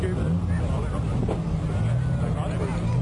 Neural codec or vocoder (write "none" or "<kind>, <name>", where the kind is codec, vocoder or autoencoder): none